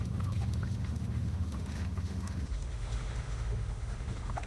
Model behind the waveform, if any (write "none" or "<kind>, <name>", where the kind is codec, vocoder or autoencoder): autoencoder, DAC-VAE